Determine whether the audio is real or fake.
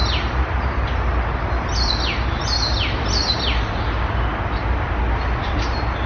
real